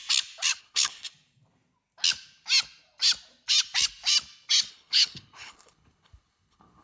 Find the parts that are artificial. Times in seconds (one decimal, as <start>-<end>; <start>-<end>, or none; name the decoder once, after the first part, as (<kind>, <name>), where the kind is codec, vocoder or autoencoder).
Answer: 0.6-1.1 (codec, HILCodec); 4.7-6.8